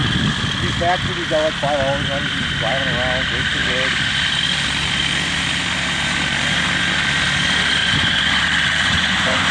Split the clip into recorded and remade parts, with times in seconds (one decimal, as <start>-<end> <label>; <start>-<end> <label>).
0.0-7.8 recorded; 7.8-9.5 remade